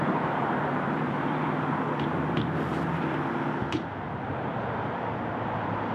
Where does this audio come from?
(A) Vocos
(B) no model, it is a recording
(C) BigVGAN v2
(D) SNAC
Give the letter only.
C